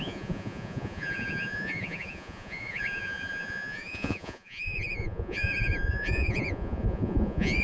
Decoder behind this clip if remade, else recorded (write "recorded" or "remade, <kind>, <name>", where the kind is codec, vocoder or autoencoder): remade, vocoder, Vocos